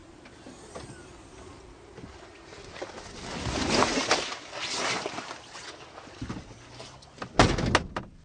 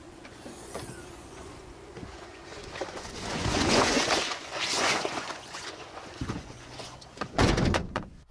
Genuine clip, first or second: first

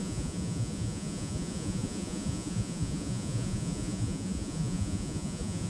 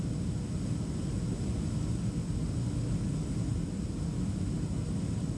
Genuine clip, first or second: second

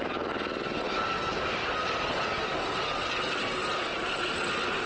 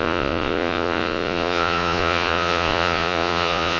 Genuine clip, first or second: first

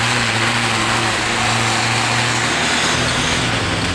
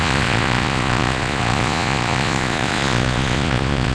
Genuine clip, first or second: first